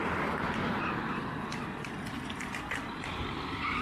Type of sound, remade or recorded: recorded